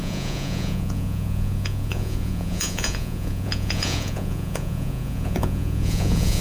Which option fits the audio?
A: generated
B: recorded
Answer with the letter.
A